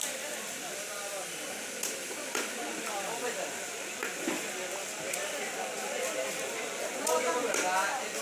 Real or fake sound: real